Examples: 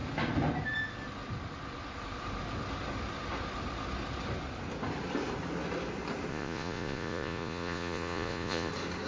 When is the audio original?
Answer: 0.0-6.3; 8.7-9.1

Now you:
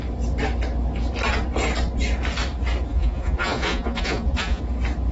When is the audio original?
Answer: 0.0-2.9; 4.6-5.1

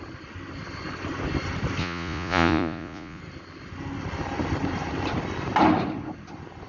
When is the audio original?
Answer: 0.0-1.8; 3.2-6.7